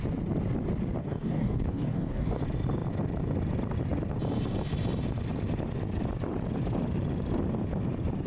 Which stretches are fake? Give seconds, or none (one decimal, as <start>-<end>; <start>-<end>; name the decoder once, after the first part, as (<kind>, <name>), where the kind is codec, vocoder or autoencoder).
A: 1.0-2.4 (codec, DAC)